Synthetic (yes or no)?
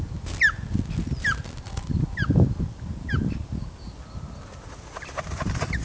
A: no